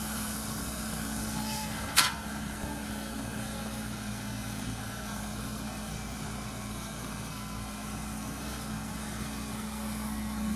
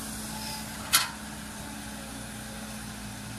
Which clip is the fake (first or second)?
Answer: first